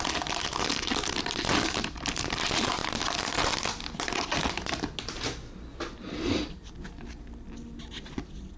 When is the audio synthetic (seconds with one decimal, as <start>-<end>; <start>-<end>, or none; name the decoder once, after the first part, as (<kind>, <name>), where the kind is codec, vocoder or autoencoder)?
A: none